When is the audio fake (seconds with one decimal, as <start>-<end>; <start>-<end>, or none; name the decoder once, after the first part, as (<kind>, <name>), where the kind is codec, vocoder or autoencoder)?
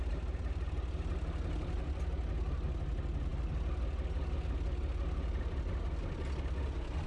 none